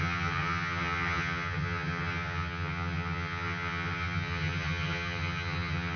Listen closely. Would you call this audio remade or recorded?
remade